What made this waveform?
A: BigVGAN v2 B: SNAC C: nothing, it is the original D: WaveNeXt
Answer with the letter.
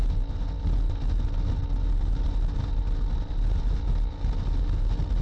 C